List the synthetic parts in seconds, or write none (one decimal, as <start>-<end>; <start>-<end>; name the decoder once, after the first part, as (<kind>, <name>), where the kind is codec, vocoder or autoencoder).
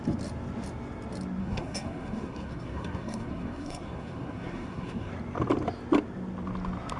1.4-5.1 (codec, SNAC)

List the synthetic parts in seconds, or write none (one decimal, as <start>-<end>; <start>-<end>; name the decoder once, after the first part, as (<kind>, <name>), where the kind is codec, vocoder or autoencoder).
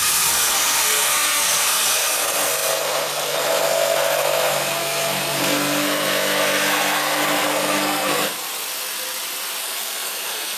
0.0-8.5 (codec, SNAC); 9.6-10.6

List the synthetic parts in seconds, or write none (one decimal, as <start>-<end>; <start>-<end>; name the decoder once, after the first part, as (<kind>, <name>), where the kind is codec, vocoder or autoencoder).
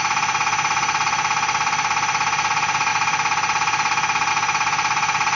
none